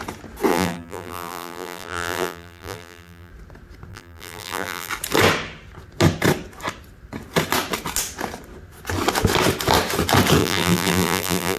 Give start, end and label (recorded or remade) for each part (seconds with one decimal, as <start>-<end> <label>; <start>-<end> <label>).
0.0-0.5 recorded; 0.5-3.3 remade; 3.3-3.9 recorded; 3.9-4.9 remade; 4.9-10.4 recorded; 10.4-11.6 remade